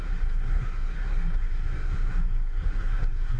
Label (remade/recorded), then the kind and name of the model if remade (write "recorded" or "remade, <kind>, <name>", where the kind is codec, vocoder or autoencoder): remade, codec, SNAC